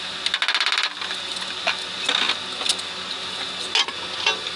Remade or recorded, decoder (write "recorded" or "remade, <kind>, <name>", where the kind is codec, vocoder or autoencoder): recorded